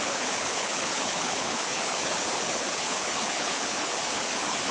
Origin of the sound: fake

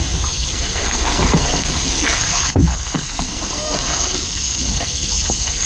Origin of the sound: fake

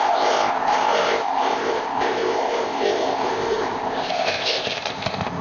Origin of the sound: fake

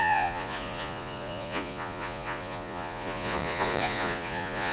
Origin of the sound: fake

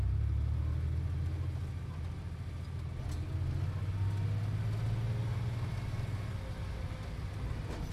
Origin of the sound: real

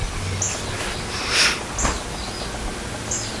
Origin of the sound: real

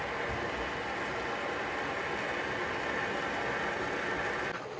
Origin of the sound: real